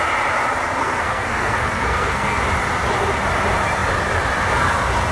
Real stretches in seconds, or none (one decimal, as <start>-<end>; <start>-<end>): 0.0-0.8; 2.4-5.1